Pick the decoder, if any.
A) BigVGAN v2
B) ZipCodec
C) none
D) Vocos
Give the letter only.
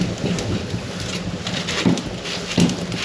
C